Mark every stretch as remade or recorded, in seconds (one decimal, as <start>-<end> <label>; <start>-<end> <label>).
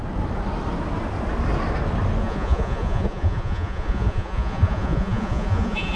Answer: 0.0-2.2 recorded; 2.2-6.0 remade